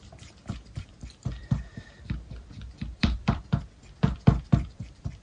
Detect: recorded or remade remade